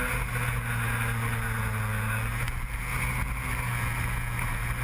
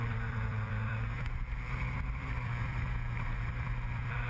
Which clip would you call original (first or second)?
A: first